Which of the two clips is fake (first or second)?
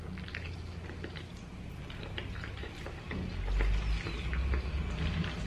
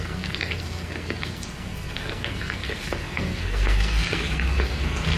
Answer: second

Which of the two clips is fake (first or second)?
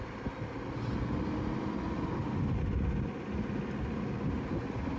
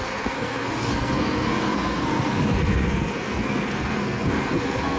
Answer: second